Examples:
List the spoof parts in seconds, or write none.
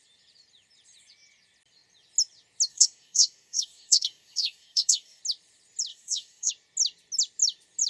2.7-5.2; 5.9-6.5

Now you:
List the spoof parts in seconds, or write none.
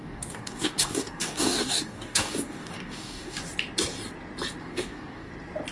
0.0-3.4; 4.6-5.3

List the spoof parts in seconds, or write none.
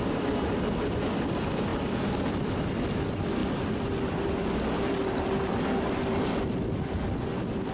none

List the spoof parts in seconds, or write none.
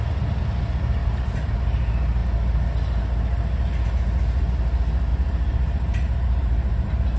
1.0-1.5; 5.1-7.2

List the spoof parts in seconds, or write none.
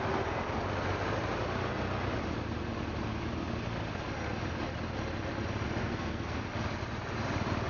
5.8-6.4